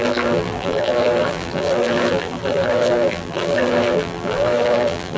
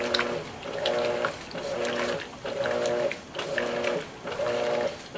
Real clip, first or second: second